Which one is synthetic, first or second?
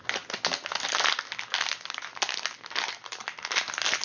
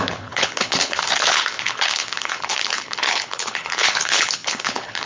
second